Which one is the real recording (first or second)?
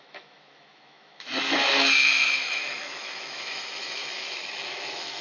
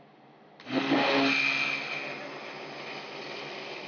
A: second